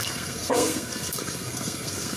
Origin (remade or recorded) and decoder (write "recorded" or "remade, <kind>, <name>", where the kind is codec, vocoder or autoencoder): remade, codec, SNAC